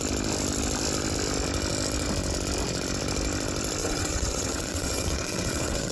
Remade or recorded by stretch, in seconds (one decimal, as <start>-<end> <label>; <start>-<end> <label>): 0.0-3.8 recorded; 3.8-5.9 remade